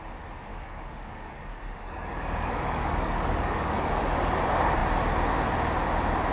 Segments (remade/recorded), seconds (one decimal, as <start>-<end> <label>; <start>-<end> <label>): 0.0-0.5 recorded; 0.5-3.9 remade; 3.9-6.3 recorded